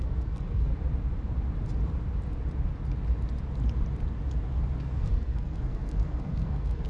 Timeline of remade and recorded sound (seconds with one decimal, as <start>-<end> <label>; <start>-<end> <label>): 0.0-0.7 remade; 0.7-4.8 recorded; 4.8-6.9 remade